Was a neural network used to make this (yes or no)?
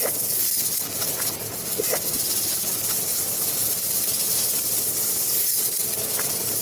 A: no